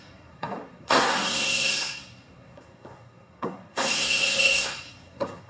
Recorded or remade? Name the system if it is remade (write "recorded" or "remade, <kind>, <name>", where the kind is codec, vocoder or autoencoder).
remade, codec, SNAC